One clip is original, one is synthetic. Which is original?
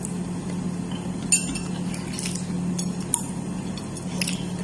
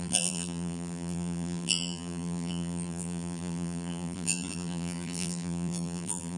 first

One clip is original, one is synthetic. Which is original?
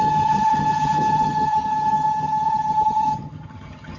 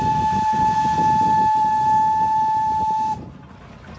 second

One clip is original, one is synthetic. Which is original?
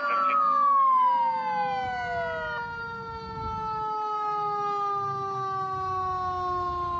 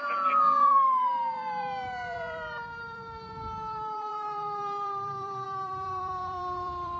first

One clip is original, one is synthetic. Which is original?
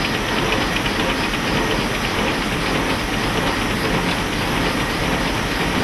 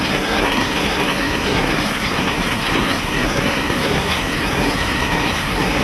first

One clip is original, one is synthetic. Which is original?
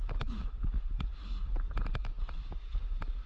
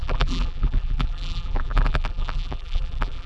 first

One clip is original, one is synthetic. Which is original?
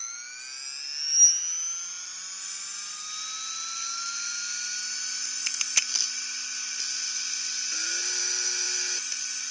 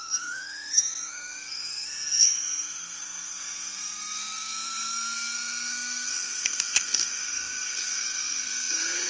first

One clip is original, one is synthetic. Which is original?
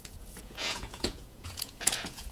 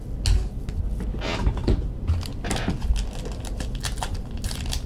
second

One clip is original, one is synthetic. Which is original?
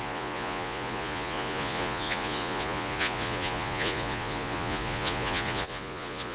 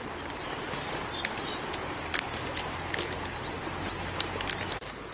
second